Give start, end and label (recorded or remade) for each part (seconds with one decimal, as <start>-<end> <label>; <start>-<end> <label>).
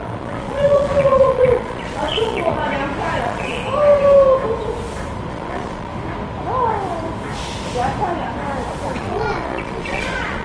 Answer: 0.0-2.6 remade; 2.6-3.2 recorded; 3.2-3.6 remade; 3.6-5.3 recorded; 5.3-5.9 remade; 5.9-9.0 recorded; 9.0-10.4 remade